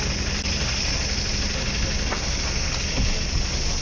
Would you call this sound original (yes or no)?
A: yes